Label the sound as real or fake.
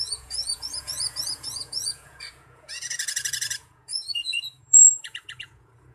fake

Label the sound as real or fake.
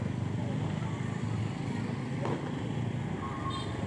real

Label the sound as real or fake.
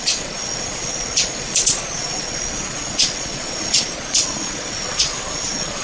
fake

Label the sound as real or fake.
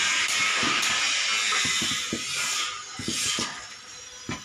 real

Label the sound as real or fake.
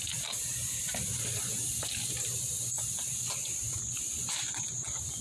real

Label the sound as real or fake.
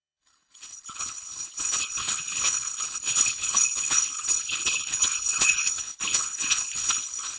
fake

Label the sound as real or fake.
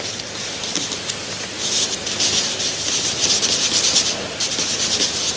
real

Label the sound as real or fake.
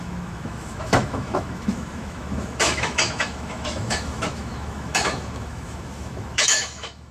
fake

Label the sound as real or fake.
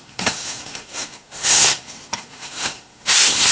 fake